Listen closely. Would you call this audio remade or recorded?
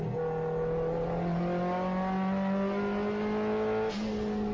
recorded